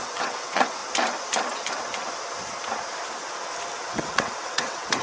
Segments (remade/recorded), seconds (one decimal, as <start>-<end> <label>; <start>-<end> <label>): 0.0-0.8 remade; 0.8-3.8 recorded; 3.8-5.0 remade